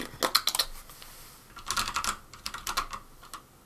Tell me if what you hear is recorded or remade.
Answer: recorded